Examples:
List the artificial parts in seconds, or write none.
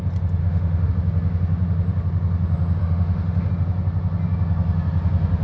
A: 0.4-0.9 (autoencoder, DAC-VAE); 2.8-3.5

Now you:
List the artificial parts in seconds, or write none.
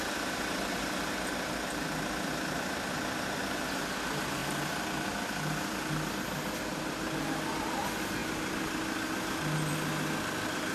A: none